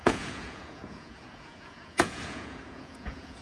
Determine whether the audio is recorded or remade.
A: remade